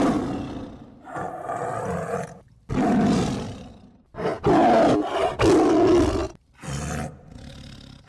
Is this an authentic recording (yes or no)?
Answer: yes